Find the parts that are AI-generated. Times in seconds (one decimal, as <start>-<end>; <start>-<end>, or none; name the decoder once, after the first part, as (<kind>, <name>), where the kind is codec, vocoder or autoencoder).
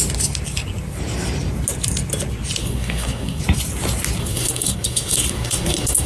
2.6-3.4 (codec, SNAC); 4.2-6.1